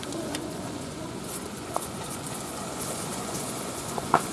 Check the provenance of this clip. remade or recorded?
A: remade